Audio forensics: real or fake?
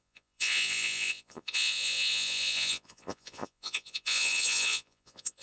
fake